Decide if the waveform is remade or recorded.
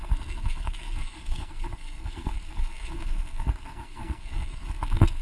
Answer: remade